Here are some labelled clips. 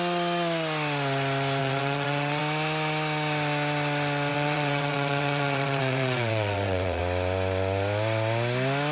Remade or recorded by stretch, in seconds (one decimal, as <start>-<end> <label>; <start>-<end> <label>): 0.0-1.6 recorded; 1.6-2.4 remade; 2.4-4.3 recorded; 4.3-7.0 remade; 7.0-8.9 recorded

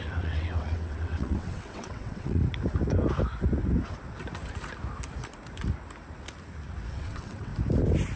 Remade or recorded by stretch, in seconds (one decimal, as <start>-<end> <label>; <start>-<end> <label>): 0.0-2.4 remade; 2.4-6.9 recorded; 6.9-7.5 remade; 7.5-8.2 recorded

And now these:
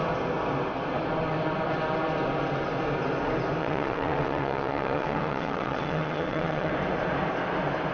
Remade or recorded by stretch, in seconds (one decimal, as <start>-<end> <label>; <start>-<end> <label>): 0.0-3.6 recorded; 3.6-6.7 remade; 6.7-7.9 recorded

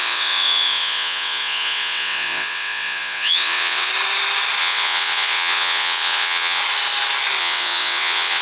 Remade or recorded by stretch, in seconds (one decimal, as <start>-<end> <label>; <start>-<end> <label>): 0.0-3.9 remade; 3.9-4.6 recorded; 4.6-6.6 remade; 6.6-7.4 recorded; 7.4-8.4 remade

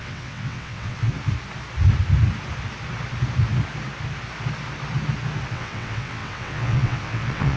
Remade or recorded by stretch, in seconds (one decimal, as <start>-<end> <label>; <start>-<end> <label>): 0.0-1.1 remade; 1.1-5.5 recorded; 5.5-7.6 remade

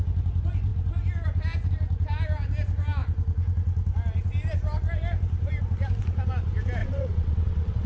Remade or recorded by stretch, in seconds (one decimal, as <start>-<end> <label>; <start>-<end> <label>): 0.0-6.8 recorded; 6.8-7.9 remade

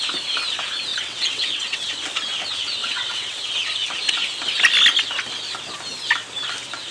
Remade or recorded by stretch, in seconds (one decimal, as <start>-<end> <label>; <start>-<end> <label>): 0.0-0.9 recorded; 0.9-1.9 remade; 1.9-2.8 recorded; 2.8-3.5 remade; 3.5-6.9 recorded

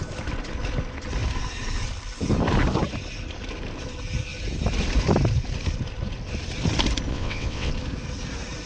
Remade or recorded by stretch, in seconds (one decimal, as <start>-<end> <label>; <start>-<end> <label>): 0.0-7.1 recorded; 7.1-7.7 remade; 7.7-8.7 recorded